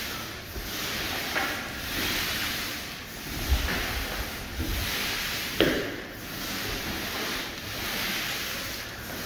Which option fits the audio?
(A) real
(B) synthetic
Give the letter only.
A